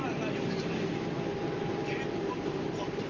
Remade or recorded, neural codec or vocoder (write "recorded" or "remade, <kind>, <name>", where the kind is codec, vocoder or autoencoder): recorded